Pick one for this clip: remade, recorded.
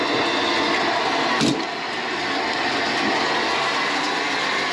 recorded